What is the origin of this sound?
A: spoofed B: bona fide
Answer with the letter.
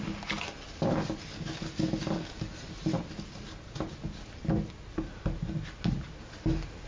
B